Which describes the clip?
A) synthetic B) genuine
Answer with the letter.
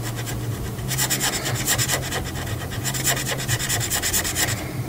B